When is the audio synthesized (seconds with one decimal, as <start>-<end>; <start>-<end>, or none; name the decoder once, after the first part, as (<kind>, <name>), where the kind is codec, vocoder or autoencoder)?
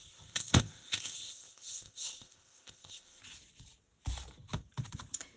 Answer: 0.0-3.2 (codec, ZipCodec)